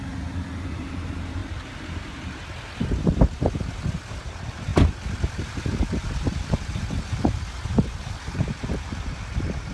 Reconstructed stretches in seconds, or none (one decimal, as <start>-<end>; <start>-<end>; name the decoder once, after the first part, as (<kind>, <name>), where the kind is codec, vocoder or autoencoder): 1.4-2.3 (vocoder, BigVGAN v2); 4.7-9.7